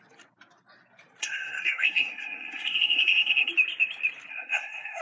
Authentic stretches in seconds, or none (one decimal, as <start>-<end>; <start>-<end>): 0.0-1.2; 3.5-4.3